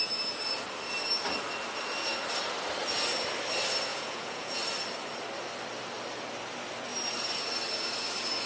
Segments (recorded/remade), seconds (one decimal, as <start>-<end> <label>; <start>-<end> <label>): 0.0-3.9 recorded; 3.9-4.5 remade; 4.5-8.5 recorded